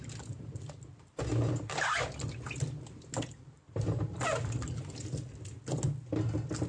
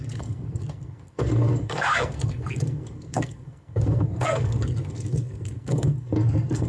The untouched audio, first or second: first